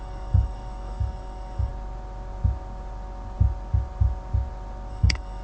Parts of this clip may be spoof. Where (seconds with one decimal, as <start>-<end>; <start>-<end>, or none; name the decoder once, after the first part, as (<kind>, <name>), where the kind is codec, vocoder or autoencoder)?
0.0-1.7 (codec, DAC); 4.9-5.4